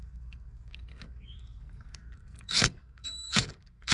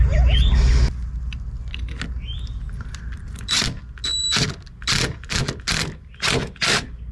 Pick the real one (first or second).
second